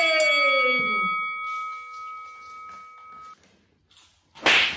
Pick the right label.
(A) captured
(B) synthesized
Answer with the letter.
A